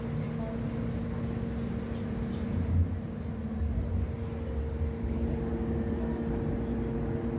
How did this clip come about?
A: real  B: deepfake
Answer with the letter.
A